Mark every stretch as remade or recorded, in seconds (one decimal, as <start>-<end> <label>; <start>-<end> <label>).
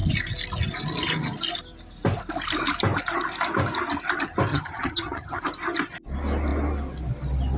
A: 0.0-4.5 recorded; 4.5-5.4 remade; 5.4-7.6 recorded